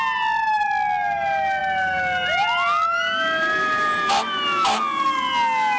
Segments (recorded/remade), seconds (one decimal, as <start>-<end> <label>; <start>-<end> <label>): 0.0-5.8 recorded